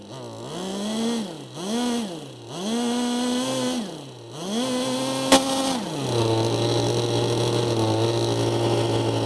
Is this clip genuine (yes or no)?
yes